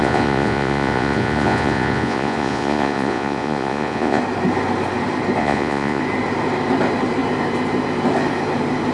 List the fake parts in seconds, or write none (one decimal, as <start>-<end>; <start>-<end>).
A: 0.0-4.2; 5.4-6.0